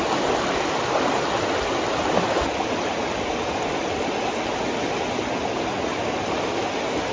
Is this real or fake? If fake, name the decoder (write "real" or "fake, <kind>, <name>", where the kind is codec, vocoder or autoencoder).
real